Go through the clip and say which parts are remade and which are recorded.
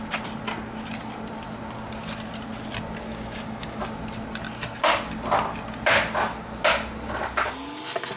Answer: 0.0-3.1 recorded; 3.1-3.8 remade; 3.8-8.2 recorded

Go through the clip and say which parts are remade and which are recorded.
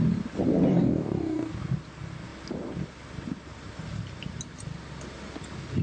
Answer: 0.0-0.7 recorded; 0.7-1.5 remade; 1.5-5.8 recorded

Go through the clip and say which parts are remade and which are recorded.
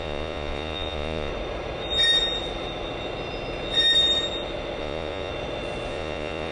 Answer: 0.0-1.3 remade; 1.3-4.8 recorded; 4.8-5.3 remade; 5.3-5.9 recorded; 5.9-6.5 remade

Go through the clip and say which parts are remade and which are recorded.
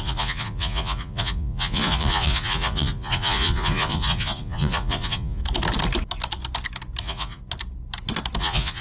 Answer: 0.0-5.4 remade; 5.4-7.0 recorded; 7.0-7.4 remade; 7.4-8.4 recorded; 8.4-8.8 remade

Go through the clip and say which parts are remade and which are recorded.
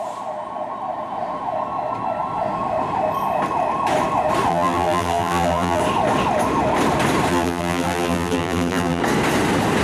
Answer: 0.0-4.5 recorded; 4.5-5.8 remade; 5.8-7.3 recorded; 7.3-9.0 remade; 9.0-9.8 recorded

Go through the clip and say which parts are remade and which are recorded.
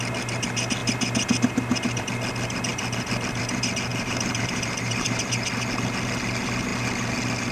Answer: 0.0-3.9 recorded; 3.9-5.3 remade; 5.3-7.5 recorded